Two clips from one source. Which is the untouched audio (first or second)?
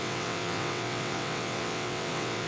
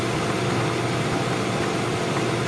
second